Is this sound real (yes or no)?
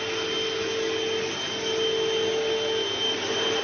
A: yes